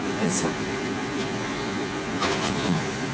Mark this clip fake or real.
fake